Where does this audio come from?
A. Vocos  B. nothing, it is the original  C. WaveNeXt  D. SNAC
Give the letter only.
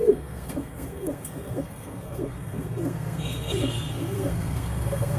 D